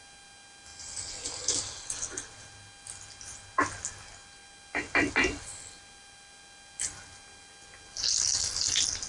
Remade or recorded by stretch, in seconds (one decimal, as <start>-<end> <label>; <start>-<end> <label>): 0.0-9.1 recorded